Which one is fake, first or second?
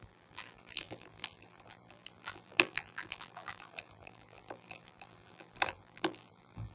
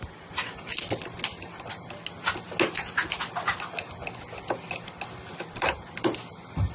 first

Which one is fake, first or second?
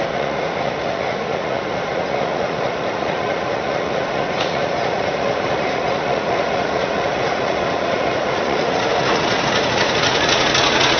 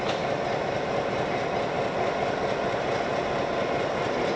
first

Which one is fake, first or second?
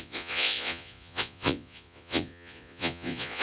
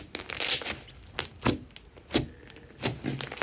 first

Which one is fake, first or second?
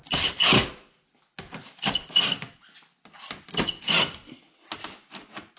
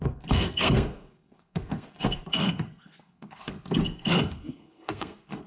second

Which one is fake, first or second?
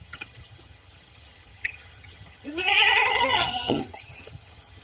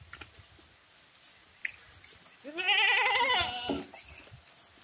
first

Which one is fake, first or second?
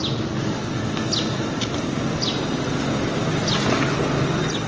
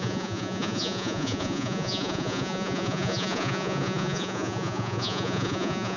second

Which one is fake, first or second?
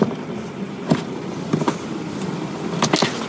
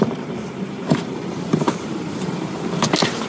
second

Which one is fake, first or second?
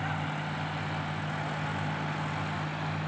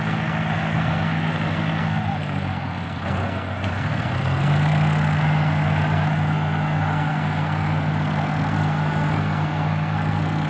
second